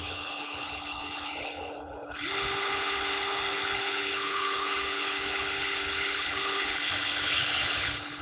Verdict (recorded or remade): remade